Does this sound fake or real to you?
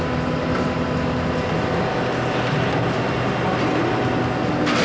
real